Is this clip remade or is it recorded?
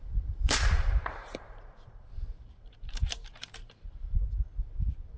remade